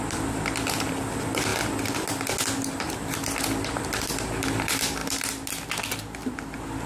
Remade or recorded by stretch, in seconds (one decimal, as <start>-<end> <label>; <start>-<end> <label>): 0.0-1.5 remade; 1.5-2.6 recorded; 2.6-6.9 remade